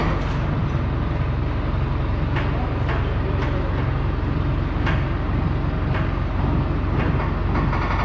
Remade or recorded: recorded